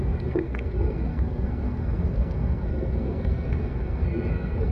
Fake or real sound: fake